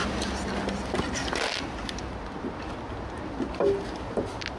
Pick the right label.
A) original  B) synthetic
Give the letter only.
A